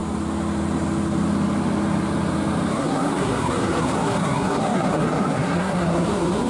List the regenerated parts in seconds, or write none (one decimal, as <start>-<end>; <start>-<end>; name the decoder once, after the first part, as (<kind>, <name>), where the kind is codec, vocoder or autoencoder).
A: 2.7-6.5 (codec, SNAC)